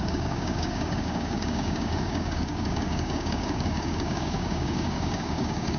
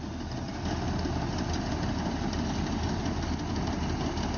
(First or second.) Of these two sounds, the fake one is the first